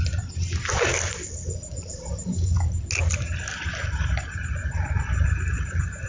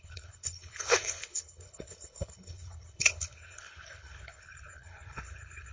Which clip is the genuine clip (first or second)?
first